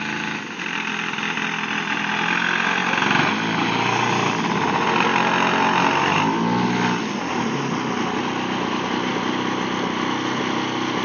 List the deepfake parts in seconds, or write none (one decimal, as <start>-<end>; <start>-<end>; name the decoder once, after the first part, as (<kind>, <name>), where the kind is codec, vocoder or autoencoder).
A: none